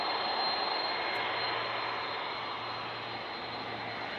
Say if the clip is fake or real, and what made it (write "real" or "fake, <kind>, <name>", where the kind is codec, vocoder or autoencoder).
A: real